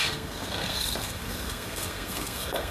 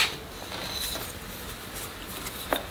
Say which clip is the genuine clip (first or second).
second